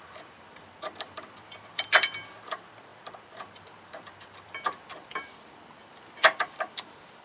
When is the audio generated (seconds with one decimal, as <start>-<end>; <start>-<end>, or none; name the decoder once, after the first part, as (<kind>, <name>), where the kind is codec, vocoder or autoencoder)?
0.0-7.2 (vocoder, BigVGAN v2)